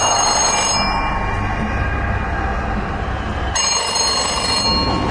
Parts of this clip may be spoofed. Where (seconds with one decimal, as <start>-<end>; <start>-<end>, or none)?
none